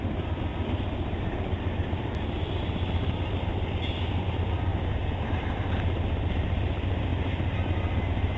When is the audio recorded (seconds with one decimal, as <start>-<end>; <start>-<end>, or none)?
3.5-4.2; 4.7-5.2